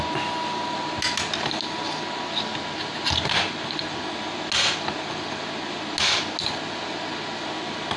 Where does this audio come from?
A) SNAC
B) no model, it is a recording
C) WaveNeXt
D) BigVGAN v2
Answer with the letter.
B